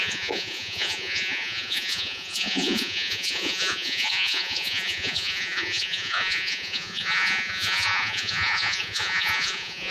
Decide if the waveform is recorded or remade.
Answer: remade